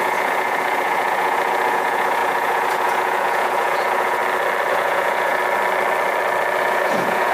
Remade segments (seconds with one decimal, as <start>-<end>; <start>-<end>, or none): 0.0-4.2; 4.7-5.4; 6.6-7.3